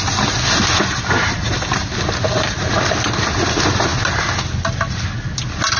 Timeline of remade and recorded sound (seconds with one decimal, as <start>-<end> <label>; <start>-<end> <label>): 0.0-5.8 recorded